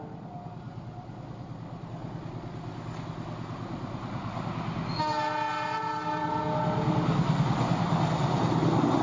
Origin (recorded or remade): recorded